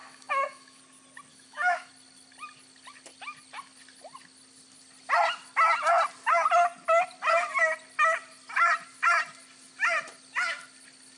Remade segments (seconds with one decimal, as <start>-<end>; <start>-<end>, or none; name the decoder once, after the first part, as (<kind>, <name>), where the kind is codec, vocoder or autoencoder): 0.0-0.8 (autoencoder, DAC-VAE); 1.3-1.9